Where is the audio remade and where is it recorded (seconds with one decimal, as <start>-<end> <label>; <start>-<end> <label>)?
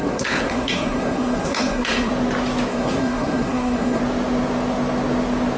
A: 0.0-2.1 remade; 2.1-2.7 recorded; 2.7-4.0 remade; 4.0-5.6 recorded